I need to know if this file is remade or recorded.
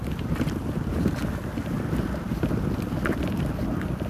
recorded